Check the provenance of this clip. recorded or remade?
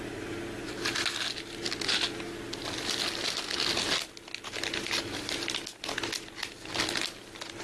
recorded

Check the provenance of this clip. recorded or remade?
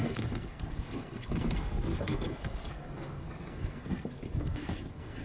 remade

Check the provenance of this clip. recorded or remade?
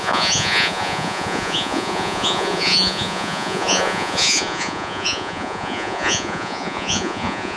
remade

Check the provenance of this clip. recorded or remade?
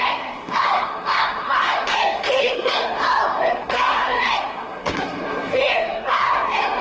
remade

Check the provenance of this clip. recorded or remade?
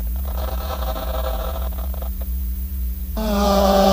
remade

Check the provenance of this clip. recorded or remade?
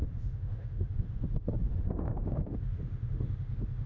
remade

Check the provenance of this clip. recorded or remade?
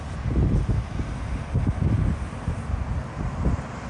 recorded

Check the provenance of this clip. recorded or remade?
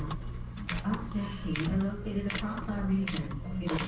recorded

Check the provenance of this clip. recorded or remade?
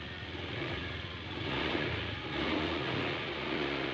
remade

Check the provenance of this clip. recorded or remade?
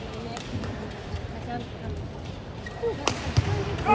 recorded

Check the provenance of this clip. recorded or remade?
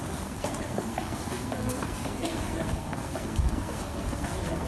remade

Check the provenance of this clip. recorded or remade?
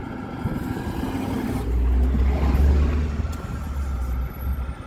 recorded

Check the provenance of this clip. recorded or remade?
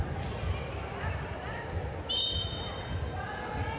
recorded